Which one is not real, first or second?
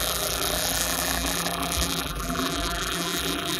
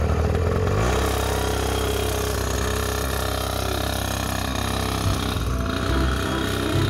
first